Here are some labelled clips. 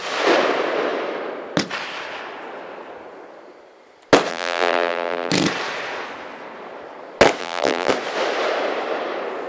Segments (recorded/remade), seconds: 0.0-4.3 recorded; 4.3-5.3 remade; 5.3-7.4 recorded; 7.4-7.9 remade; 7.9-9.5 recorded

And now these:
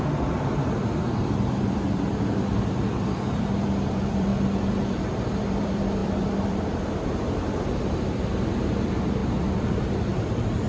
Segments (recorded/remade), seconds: 0.0-4.3 remade; 4.3-5.3 recorded; 5.3-9.2 remade; 9.2-9.7 recorded; 9.7-10.7 remade